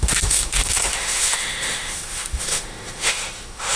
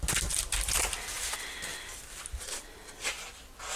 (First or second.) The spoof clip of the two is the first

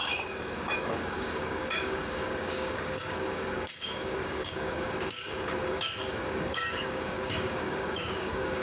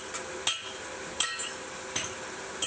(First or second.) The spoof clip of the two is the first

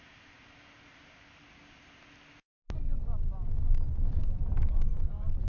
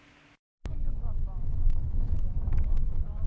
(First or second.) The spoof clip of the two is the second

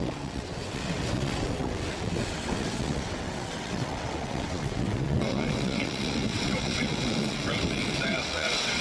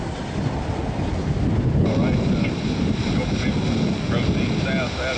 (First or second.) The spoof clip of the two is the first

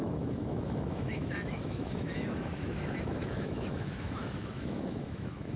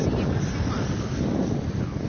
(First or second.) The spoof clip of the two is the first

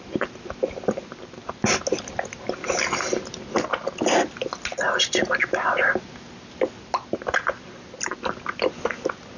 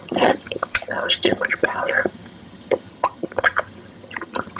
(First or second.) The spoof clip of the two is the second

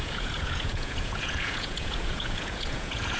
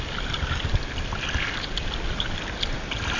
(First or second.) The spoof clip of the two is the first